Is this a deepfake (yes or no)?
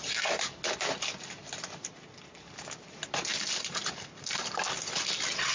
no